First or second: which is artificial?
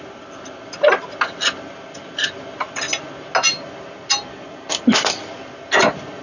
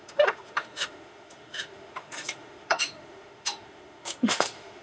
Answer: second